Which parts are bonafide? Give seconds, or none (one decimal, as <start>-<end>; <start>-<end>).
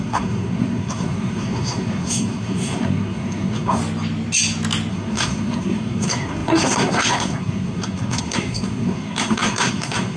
3.8-4.9